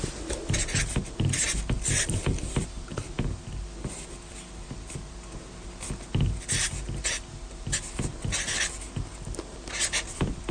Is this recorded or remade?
recorded